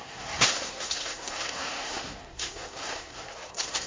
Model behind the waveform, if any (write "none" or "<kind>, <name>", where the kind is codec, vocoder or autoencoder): codec, SNAC